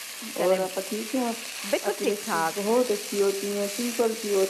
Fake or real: real